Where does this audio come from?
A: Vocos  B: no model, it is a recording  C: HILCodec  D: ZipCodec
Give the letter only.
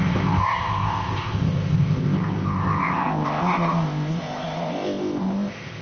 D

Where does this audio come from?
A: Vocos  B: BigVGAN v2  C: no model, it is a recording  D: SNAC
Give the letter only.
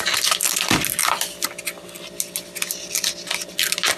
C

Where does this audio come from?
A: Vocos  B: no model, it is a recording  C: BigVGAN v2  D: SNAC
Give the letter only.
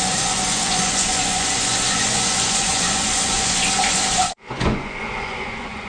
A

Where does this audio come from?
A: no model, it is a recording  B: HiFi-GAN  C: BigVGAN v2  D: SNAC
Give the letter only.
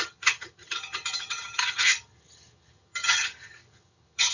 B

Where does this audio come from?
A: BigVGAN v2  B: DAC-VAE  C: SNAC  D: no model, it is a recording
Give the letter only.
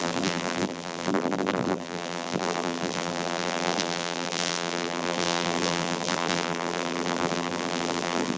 A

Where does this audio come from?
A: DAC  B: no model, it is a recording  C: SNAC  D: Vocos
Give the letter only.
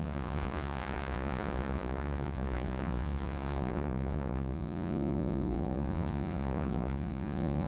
D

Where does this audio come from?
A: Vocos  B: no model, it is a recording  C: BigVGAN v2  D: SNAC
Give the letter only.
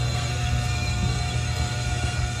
D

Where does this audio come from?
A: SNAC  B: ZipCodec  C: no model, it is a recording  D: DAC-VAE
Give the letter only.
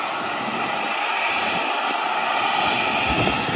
C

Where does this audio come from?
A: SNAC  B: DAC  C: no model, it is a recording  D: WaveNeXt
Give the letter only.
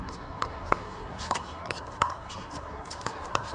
A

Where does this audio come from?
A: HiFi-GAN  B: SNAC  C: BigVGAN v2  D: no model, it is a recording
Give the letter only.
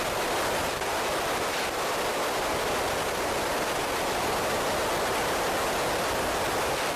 D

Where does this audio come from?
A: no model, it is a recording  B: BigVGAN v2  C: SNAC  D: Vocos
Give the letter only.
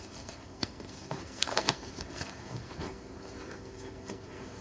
C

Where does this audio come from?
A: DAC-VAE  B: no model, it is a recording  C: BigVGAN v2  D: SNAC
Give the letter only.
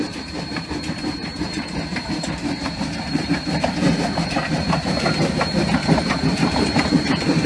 C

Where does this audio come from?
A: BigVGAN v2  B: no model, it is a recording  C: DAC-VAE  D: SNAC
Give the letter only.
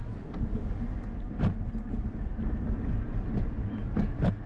B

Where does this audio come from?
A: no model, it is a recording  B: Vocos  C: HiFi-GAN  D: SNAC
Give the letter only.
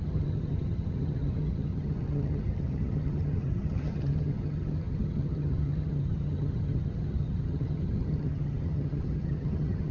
C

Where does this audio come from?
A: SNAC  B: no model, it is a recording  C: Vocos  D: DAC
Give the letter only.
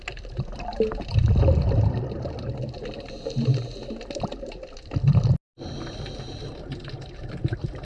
B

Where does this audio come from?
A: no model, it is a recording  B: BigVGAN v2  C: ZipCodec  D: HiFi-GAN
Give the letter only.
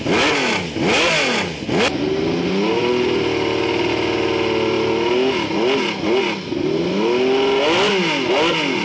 A